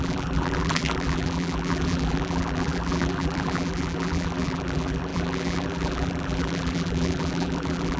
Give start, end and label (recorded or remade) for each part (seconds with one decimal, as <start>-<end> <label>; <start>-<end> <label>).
0.0-8.0 remade